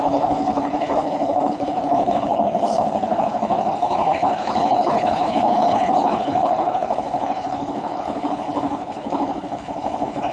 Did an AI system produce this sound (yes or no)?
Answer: yes